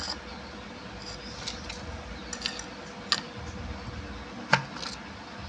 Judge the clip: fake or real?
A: real